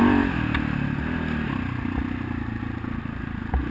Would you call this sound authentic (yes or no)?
yes